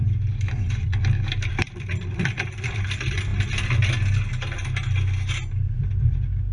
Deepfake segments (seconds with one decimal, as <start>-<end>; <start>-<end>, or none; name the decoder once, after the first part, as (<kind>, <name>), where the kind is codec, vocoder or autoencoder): 0.0-3.3 (vocoder, BigVGAN v2); 5.3-6.5